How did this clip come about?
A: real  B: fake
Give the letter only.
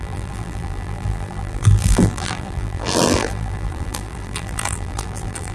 B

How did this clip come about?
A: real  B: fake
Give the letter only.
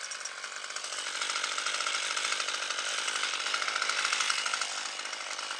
A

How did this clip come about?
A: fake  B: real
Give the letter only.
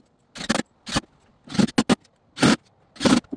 B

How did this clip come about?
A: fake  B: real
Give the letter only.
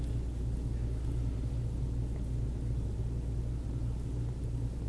B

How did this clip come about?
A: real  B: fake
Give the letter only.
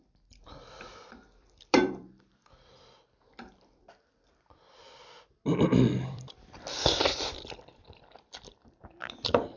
B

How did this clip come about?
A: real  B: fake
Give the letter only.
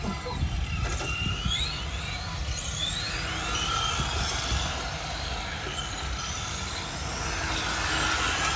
A